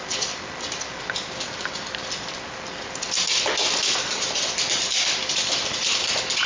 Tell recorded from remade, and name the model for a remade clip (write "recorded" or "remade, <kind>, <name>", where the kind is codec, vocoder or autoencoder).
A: recorded